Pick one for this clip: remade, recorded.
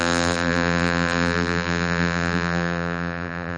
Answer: remade